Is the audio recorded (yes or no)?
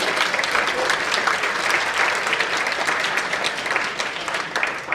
yes